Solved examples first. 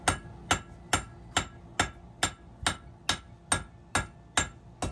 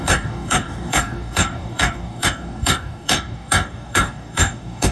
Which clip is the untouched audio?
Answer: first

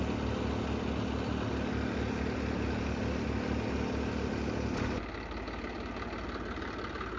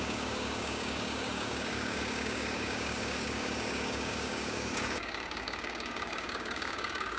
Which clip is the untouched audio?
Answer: first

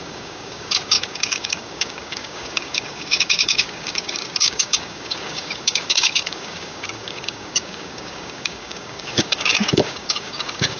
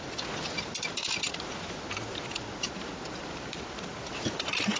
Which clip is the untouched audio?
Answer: second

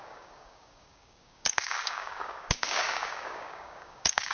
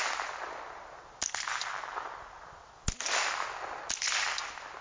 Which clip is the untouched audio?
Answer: second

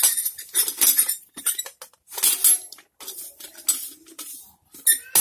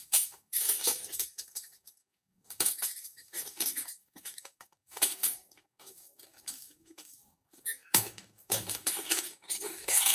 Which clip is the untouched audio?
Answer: first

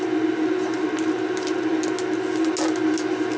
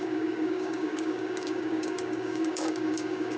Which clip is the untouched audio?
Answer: first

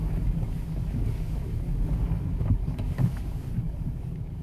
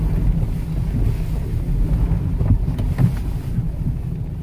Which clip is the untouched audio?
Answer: second